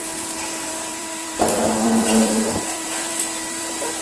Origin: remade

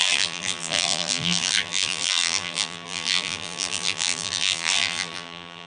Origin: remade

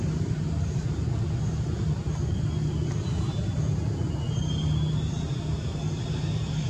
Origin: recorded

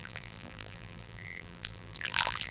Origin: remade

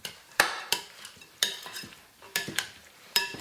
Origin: remade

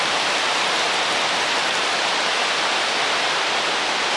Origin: recorded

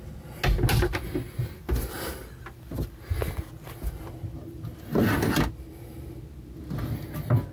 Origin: recorded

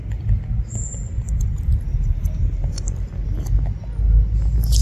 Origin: recorded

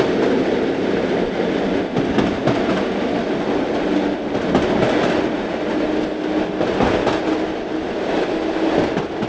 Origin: recorded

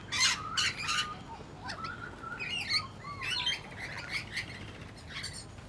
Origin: recorded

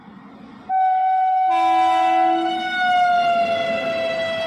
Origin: recorded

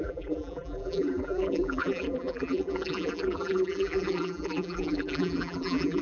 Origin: remade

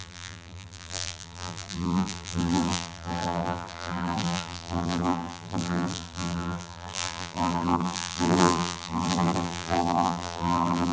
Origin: remade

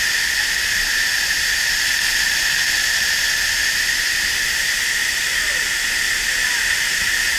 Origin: recorded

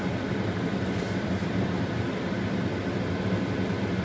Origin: remade